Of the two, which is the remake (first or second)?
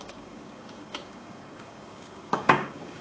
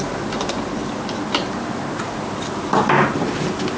first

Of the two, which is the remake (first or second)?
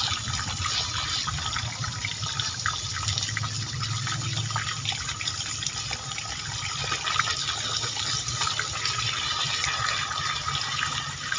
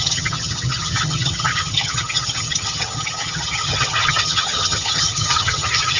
second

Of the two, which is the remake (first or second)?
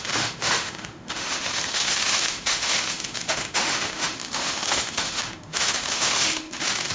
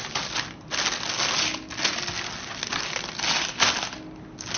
first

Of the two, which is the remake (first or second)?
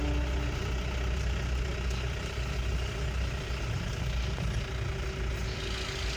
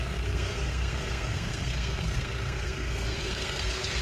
second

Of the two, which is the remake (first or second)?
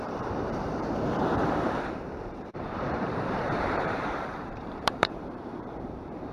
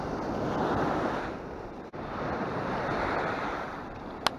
first